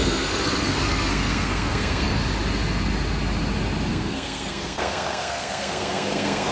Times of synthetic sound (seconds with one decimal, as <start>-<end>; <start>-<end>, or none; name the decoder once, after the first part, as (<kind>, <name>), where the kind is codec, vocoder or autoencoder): 0.0-2.2 (codec, SNAC); 3.9-6.5